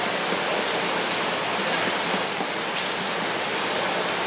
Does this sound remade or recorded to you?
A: recorded